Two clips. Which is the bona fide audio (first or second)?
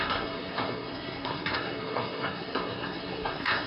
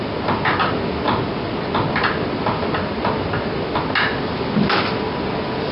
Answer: second